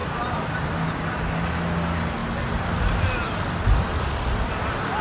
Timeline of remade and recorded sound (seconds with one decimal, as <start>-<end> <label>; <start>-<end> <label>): 0.0-5.0 recorded